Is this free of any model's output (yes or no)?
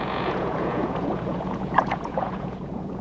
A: no